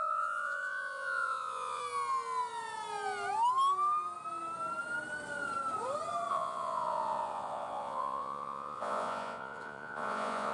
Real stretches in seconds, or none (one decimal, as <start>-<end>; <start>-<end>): 1.8-6.3